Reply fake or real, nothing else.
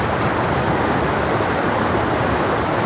real